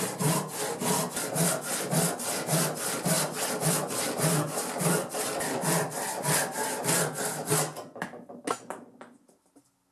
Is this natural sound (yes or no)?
yes